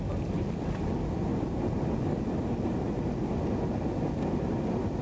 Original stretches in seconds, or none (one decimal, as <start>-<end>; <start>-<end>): 0.0-5.0